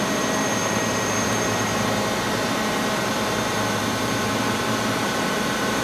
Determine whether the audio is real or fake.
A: fake